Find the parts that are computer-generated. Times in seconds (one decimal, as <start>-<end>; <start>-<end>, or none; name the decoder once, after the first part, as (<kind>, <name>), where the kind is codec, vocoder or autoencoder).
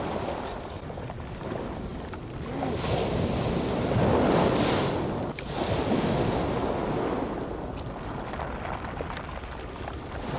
none